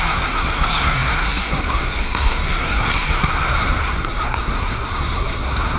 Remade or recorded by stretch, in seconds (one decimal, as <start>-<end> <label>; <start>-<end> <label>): 0.0-5.8 remade